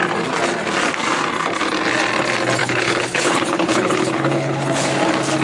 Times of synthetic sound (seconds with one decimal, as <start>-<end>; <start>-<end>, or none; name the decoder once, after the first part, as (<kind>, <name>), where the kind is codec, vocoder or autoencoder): 2.6-4.9 (codec, HILCodec)